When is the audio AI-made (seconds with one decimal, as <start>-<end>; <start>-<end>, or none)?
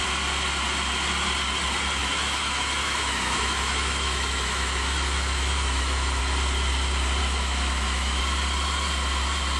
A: 2.0-6.2; 7.2-8.2